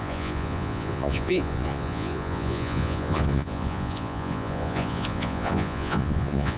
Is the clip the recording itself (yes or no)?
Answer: no